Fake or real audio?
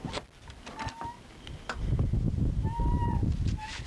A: real